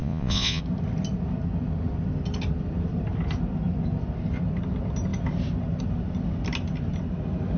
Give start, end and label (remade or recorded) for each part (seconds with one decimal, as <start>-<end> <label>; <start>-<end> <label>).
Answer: 0.0-0.6 remade; 0.6-7.6 recorded